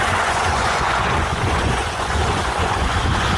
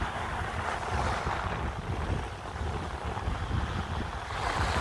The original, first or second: second